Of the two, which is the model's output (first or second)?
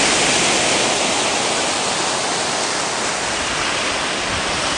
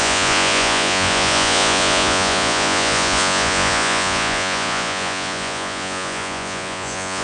second